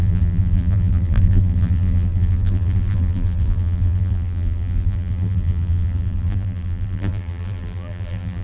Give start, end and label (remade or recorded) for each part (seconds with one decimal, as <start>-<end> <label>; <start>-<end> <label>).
0.0-8.4 remade